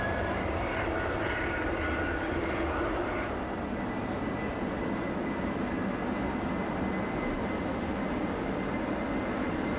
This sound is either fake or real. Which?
real